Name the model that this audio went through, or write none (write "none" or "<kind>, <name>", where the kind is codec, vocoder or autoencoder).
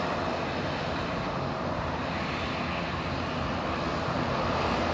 none